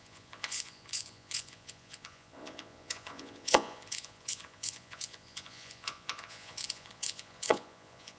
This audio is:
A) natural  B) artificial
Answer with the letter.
B